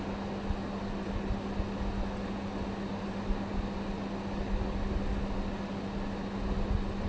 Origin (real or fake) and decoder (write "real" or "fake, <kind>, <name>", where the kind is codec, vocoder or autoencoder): real